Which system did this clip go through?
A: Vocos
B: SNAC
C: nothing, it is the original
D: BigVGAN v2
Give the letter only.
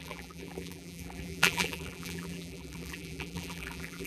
D